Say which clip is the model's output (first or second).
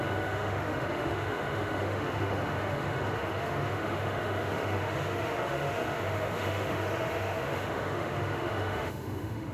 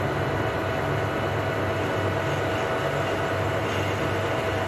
first